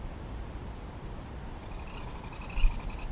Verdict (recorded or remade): recorded